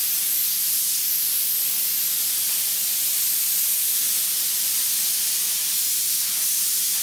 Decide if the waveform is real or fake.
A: real